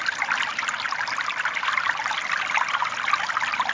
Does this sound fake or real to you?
real